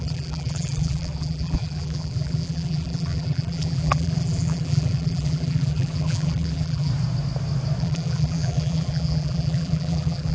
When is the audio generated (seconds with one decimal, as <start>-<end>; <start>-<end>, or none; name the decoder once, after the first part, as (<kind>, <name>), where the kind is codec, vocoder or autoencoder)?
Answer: 0.0-6.9 (vocoder, BigVGAN v2); 7.8-10.3